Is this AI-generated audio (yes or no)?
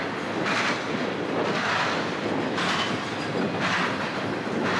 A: no